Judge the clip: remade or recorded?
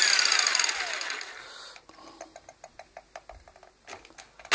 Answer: recorded